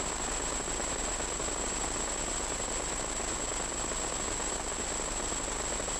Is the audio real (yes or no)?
yes